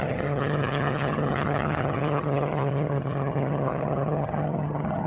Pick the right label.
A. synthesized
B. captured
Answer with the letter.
A